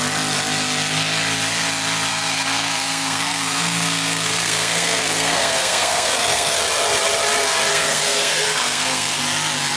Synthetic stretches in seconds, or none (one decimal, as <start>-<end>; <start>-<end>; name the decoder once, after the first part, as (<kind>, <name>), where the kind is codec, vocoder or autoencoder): 2.1-6.6 (codec, SNAC); 7.7-9.2